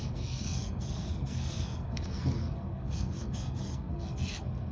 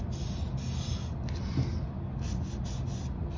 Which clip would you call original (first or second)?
second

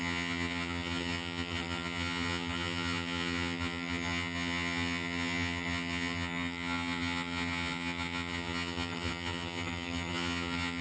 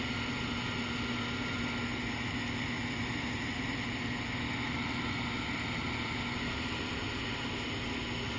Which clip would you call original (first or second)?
second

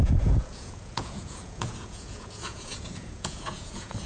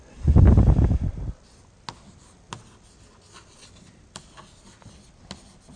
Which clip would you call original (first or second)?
second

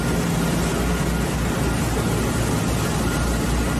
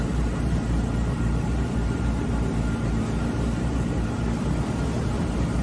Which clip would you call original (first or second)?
first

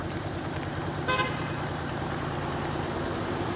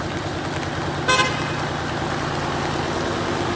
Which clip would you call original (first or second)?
second